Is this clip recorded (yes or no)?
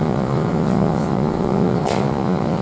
no